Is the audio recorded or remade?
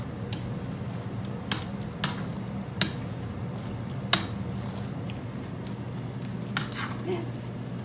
recorded